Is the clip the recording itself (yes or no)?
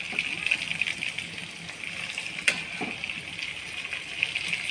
yes